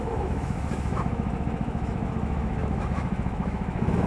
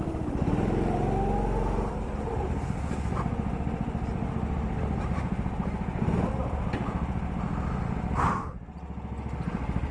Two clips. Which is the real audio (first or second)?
second